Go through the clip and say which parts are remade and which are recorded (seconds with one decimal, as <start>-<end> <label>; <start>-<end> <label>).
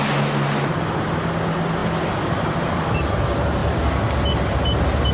0.0-5.1 recorded